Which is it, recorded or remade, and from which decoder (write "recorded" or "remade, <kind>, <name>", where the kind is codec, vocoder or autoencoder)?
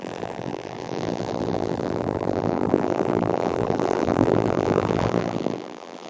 remade, vocoder, BigVGAN v2